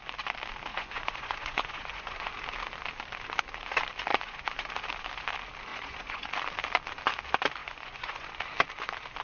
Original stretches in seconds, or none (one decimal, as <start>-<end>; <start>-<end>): 0.0-0.7; 2.3-4.1; 4.7-5.7; 6.3-7.6; 8.3-9.2